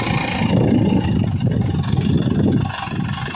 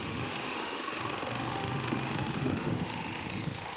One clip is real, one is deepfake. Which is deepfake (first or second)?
second